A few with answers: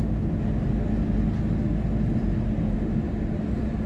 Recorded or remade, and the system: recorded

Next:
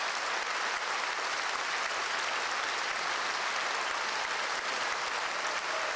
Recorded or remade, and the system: recorded